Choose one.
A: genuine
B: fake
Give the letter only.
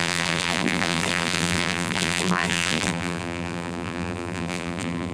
B